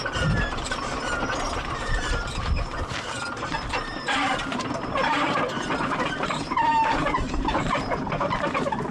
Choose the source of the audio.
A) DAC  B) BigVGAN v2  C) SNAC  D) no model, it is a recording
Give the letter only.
B